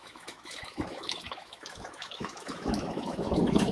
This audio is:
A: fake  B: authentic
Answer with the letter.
A